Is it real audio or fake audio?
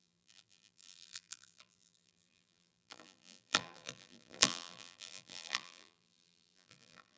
fake